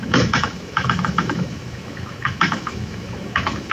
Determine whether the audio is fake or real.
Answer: fake